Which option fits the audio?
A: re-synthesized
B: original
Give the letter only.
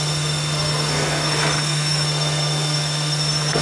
A